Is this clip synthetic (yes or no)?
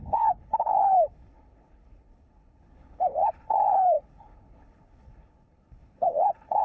yes